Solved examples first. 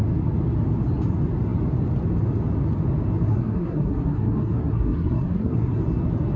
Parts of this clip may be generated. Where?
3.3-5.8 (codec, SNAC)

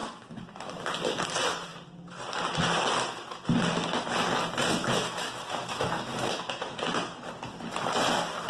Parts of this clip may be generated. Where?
0.0-0.7 (autoencoder, DAC-VAE); 4.8-6.8

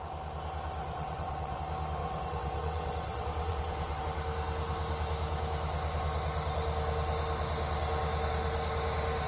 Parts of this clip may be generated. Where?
0.8-1.6 (vocoder, WaveNeXt); 2.0-4.0

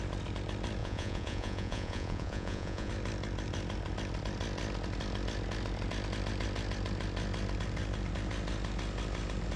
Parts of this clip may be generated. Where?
0.8-2.9 (vocoder, Vocos)